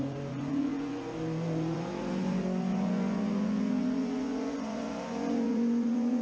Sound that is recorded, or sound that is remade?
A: remade